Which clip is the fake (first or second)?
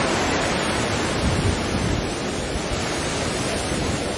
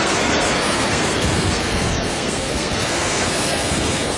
second